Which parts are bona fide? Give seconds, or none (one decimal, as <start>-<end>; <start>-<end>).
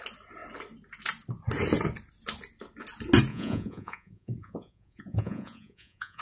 0.0-3.3